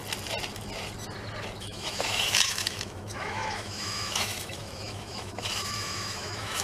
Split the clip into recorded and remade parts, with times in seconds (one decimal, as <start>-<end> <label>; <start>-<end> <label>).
0.0-1.6 recorded; 1.6-6.6 remade